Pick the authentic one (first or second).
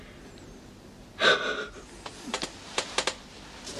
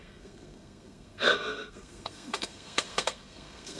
first